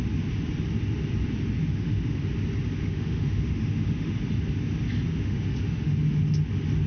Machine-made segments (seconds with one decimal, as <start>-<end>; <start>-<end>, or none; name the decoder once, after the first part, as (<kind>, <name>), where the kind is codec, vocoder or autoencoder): 1.6-2.2 (autoencoder, DAC-VAE); 2.8-4.2; 5.1-5.9